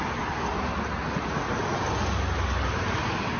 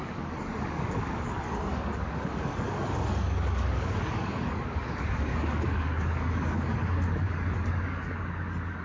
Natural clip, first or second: first